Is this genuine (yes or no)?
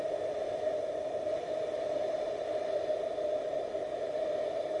no